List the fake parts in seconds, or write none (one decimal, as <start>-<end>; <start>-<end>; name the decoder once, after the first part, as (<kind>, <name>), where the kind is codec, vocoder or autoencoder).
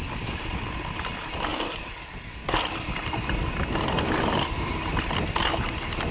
none